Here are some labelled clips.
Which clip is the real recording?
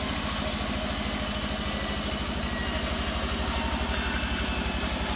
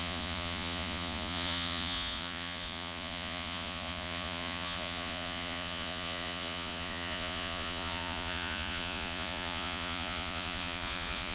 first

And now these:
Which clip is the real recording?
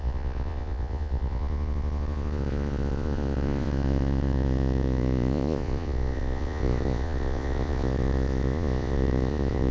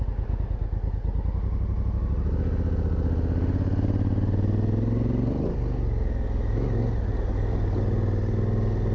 second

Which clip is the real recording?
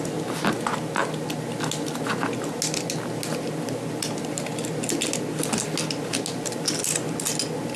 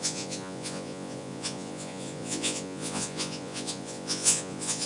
first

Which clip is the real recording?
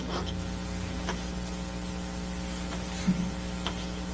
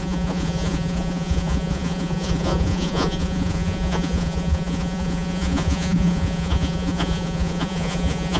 first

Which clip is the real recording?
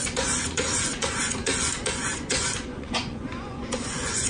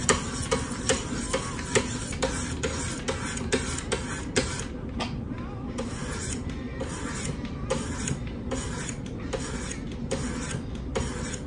second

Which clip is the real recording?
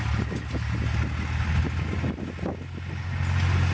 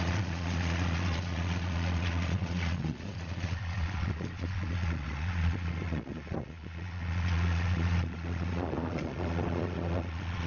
first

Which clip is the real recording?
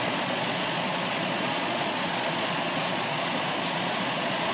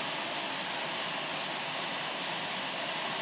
second